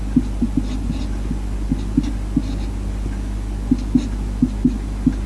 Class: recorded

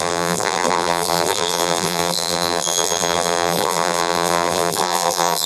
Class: remade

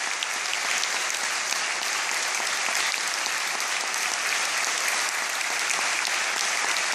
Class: recorded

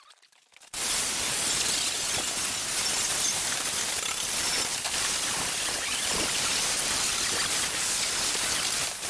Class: recorded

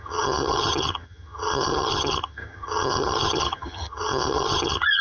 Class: remade